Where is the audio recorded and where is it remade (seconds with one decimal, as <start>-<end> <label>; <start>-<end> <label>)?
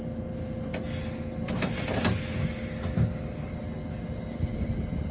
0.0-5.1 recorded